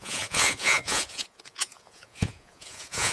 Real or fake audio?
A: fake